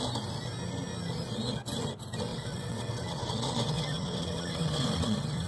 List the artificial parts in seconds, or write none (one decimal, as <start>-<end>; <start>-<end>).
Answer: 2.3-5.5